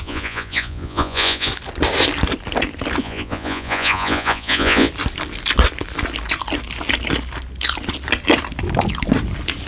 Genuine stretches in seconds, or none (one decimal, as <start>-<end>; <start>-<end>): 1.5-3.0; 4.9-9.7